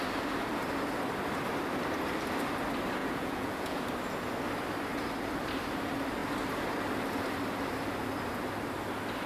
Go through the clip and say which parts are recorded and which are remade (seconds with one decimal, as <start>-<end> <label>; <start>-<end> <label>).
0.0-3.0 recorded; 3.0-3.9 remade; 3.9-9.3 recorded